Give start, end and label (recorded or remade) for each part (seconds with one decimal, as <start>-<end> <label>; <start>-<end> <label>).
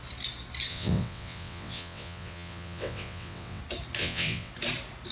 0.0-0.7 recorded; 0.7-3.6 remade; 3.6-4.0 recorded; 4.0-4.5 remade; 4.5-5.1 recorded